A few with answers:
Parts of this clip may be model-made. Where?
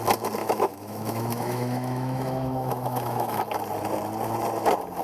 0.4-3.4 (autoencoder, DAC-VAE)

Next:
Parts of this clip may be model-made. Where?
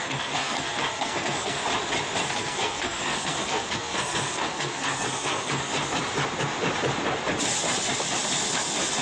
0.0-1.6 (codec, SNAC); 2.3-5.7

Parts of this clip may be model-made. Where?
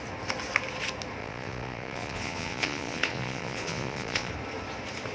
1.2-4.3 (vocoder, Vocos)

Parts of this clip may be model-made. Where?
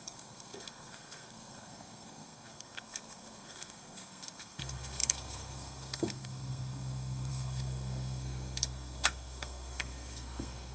0.0-10.7 (codec, SNAC)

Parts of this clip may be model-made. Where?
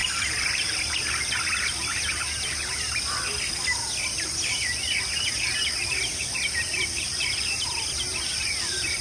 0.0-1.7 (vocoder, BigVGAN v2); 2.1-3.2; 5.3-8.6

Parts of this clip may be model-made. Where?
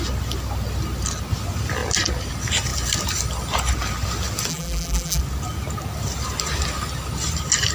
4.5-5.2 (vocoder, BigVGAN v2)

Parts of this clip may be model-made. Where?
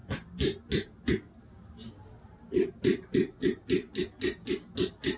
none